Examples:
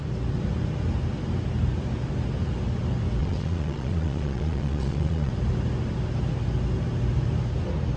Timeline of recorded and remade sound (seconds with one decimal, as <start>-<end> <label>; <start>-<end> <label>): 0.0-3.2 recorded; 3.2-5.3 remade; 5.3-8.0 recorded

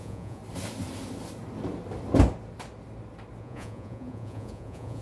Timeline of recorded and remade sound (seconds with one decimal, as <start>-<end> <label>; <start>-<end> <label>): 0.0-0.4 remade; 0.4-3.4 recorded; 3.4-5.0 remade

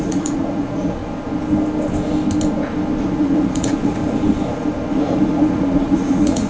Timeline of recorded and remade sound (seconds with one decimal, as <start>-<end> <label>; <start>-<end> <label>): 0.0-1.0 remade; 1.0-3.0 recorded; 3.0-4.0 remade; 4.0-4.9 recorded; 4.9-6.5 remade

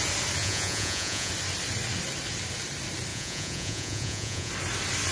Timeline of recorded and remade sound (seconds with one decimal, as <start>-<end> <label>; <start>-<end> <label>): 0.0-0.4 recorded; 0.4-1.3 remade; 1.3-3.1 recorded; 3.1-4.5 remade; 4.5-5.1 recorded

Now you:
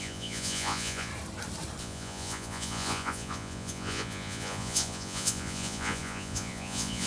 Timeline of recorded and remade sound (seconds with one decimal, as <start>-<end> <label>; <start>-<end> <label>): 0.0-1.1 remade; 1.1-1.8 recorded; 1.8-7.1 remade

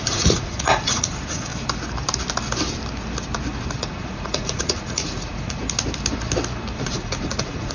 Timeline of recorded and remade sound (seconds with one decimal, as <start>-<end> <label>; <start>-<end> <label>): 0.0-1.5 remade; 1.5-3.8 recorded; 3.8-5.6 remade; 5.6-6.8 recorded; 6.8-7.7 remade

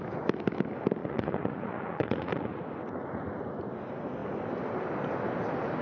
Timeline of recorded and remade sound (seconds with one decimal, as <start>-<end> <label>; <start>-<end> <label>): 0.0-1.0 recorded; 1.0-2.6 remade; 2.6-5.8 recorded